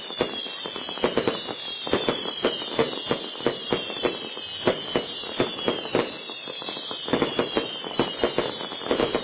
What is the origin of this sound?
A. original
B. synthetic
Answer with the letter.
A